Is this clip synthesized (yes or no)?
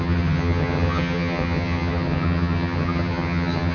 yes